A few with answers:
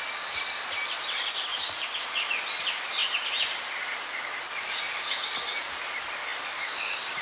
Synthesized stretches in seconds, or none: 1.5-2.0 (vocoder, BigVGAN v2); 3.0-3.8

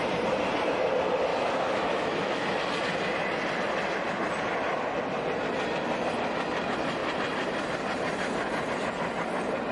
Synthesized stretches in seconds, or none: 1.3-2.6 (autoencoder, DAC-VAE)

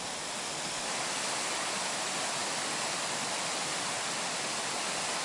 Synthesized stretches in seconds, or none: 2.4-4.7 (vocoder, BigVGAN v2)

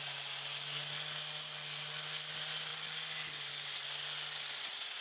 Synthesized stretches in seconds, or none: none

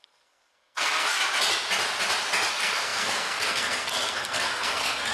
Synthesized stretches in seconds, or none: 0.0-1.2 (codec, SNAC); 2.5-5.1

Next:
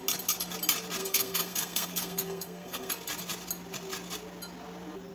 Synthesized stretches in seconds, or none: 1.0-2.9 (codec, SNAC)

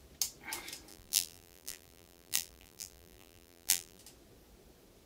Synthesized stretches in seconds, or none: 0.9-4.0 (vocoder, BigVGAN v2)